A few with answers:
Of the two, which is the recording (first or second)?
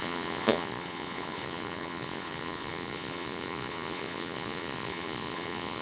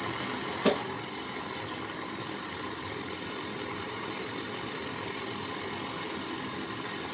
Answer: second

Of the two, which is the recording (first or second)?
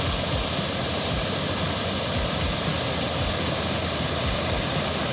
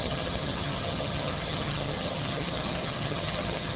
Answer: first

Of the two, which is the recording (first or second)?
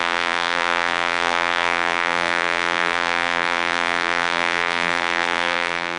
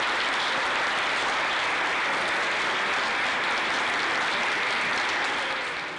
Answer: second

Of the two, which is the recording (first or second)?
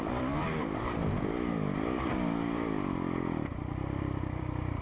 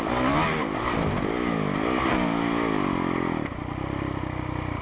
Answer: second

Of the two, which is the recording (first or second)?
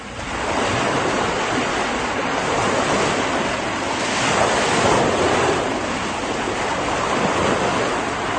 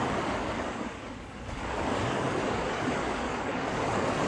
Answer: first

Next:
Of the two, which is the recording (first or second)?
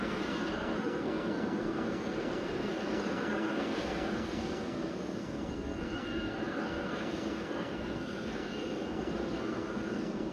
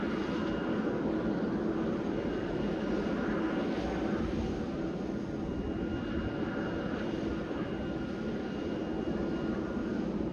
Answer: second